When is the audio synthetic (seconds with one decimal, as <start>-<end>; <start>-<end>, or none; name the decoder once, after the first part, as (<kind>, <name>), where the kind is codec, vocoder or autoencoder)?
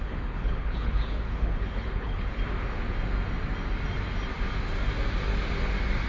0.0-2.4 (codec, HILCodec)